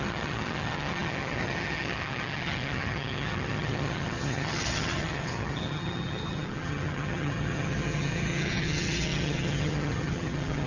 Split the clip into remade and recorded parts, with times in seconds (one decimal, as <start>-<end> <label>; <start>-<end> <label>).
0.0-10.7 remade